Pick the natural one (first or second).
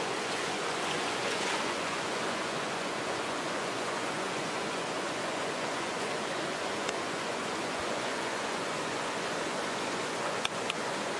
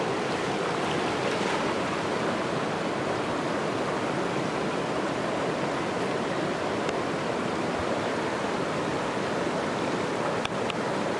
second